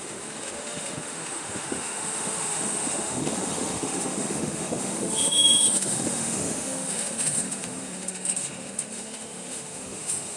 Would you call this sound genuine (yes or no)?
no